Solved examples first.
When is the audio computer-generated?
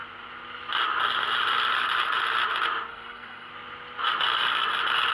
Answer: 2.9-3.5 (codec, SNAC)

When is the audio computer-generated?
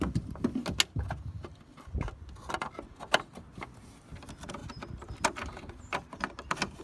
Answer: none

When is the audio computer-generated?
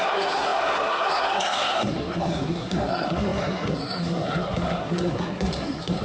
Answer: 0.0-6.0 (codec, SNAC)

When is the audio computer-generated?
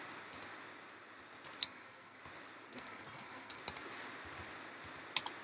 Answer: 1.6-2.2 (codec, SNAC); 2.7-3.6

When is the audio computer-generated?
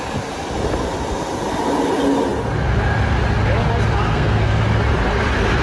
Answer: 4.1-4.6 (codec, SNAC)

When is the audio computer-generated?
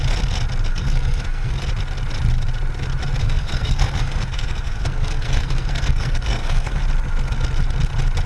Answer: 0.7-1.6 (codec, SNAC); 3.2-6.8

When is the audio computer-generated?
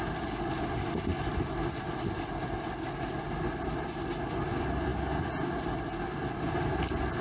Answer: none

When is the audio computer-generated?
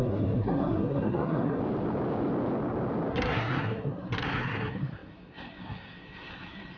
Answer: 0.0-1.6 (codec, SNAC); 3.1-6.8